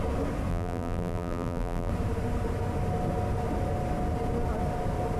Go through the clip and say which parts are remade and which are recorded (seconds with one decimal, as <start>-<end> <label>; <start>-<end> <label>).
0.0-0.5 recorded; 0.5-1.9 remade; 1.9-5.2 recorded